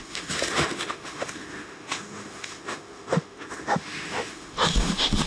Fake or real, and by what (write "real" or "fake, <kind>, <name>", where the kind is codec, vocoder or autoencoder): fake, autoencoder, DAC-VAE